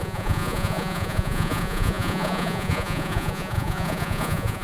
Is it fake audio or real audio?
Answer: fake